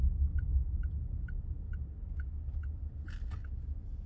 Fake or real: real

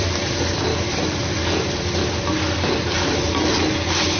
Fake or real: real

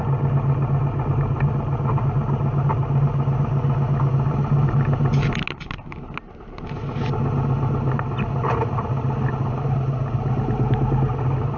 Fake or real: real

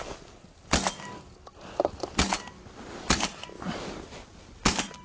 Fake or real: real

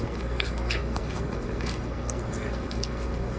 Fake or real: fake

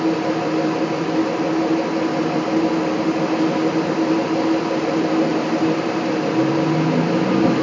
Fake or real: real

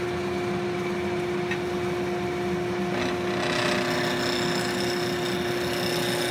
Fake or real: real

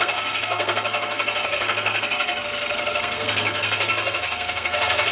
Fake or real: fake